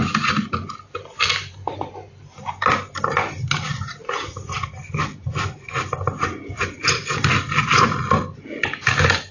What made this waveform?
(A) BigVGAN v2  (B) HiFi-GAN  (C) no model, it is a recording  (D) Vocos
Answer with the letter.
C